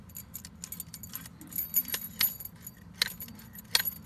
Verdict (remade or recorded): recorded